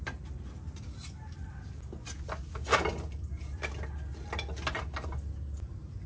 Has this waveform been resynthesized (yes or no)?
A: no